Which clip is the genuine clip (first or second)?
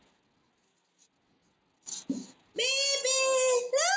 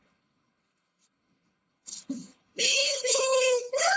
first